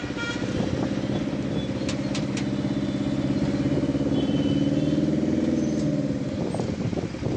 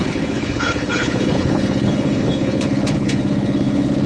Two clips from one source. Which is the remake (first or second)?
second